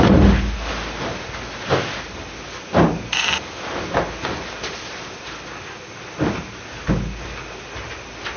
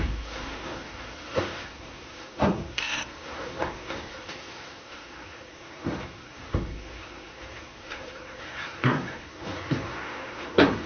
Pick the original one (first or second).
first